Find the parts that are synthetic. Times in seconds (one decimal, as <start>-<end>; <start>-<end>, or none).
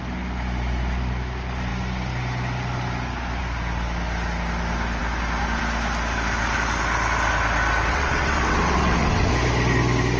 7.9-9.3